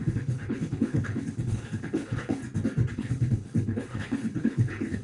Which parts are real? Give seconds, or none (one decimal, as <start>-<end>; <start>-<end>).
2.4-2.9